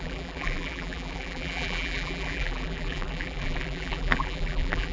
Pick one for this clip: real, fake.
fake